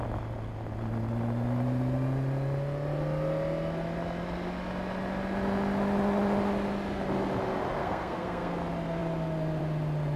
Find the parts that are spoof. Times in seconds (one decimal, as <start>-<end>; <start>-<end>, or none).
7.8-8.5